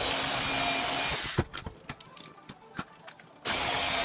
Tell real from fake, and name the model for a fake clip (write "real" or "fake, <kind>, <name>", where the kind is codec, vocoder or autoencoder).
real